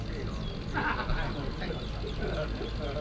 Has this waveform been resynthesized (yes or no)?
no